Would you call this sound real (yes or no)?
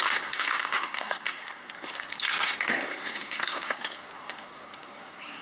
no